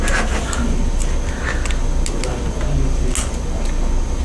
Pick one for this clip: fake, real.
real